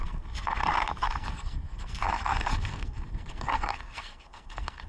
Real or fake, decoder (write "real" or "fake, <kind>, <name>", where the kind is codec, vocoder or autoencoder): fake, codec, SNAC